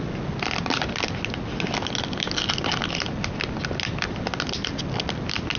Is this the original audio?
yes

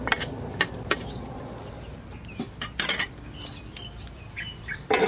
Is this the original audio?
yes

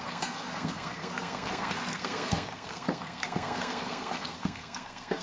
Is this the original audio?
no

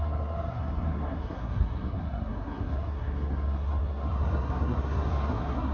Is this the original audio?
no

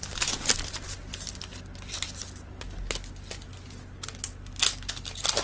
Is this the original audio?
yes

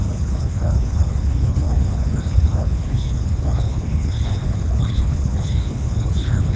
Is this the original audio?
no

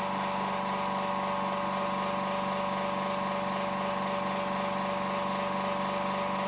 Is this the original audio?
yes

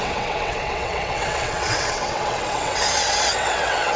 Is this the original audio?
no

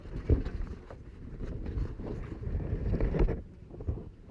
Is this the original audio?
yes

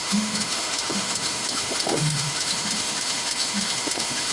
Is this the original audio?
no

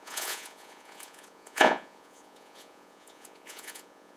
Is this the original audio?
no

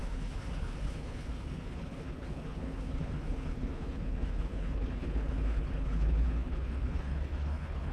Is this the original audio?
no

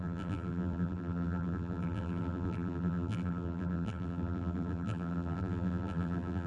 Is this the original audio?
no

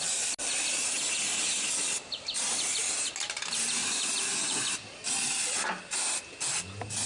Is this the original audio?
yes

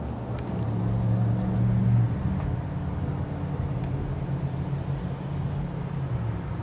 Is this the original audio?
yes